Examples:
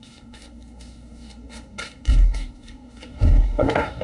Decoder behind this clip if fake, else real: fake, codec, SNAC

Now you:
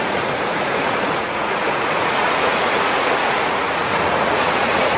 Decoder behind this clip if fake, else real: fake, vocoder, Vocos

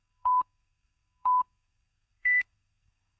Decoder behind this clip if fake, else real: fake, codec, SNAC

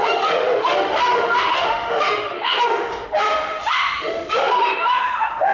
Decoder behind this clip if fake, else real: fake, autoencoder, DAC-VAE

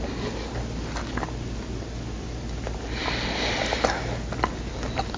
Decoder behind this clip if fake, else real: real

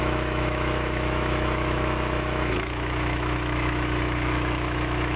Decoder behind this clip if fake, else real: fake, autoencoder, DAC-VAE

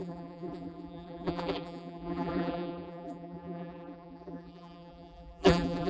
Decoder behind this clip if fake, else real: fake, vocoder, BigVGAN v2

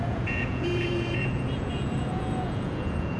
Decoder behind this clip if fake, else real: fake, vocoder, Vocos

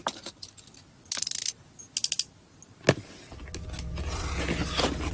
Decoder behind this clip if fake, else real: real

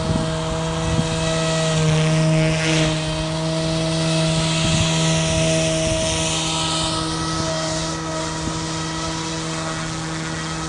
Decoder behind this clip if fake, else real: real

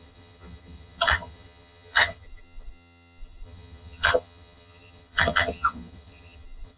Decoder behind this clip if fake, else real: fake, vocoder, HiFi-GAN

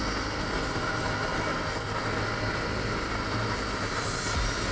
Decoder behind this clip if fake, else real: real